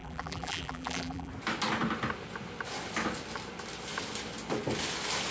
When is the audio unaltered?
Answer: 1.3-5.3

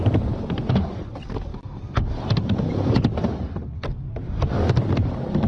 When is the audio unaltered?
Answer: 0.0-5.5

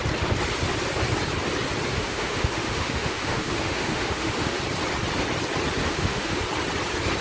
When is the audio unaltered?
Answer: 0.0-1.9; 4.6-5.8; 6.4-7.2

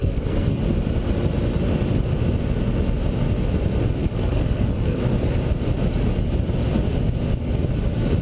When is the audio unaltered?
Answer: 0.6-4.0; 5.0-8.2